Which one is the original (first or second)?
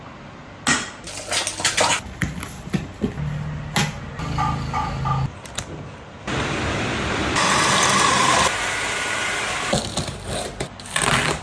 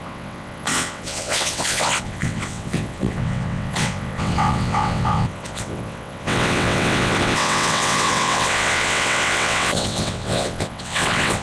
first